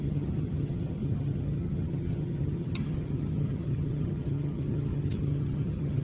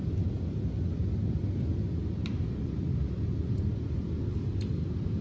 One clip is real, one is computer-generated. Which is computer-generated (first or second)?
first